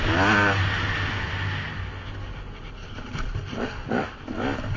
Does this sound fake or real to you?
real